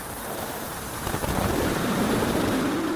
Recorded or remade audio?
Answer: remade